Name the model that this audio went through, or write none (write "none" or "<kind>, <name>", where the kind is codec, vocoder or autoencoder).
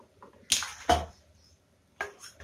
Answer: none